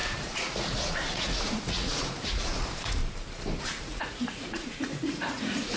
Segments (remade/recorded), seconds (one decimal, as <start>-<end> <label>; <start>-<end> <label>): 0.0-3.0 remade; 3.0-3.6 recorded; 3.6-5.8 remade

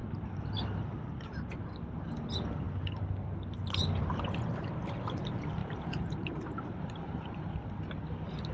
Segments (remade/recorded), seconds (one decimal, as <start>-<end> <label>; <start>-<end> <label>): 0.0-0.6 remade; 0.6-5.6 recorded; 5.6-7.3 remade; 7.3-8.5 recorded

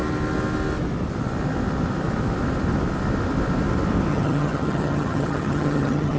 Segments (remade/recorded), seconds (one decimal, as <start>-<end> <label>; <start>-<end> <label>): 0.0-4.1 recorded; 4.1-6.2 remade

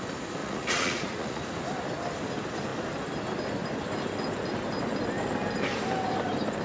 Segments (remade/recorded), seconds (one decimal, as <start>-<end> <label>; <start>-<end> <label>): 0.0-0.4 recorded; 0.4-1.4 remade; 1.4-6.6 recorded

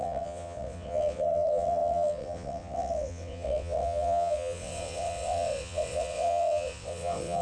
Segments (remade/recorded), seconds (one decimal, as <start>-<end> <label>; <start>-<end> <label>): 0.0-7.4 remade

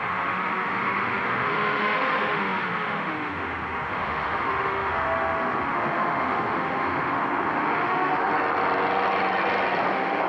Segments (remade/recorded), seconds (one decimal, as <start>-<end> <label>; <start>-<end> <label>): 0.0-8.3 remade; 8.3-9.9 recorded; 9.9-10.3 remade